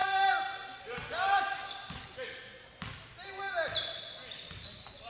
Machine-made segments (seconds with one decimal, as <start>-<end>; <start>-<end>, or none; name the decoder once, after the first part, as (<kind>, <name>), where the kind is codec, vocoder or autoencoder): none